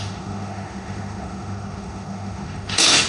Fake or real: fake